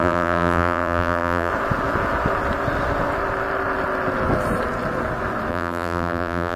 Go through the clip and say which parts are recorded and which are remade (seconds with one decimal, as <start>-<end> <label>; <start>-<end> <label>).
0.0-1.5 remade; 1.5-5.5 recorded; 5.5-6.6 remade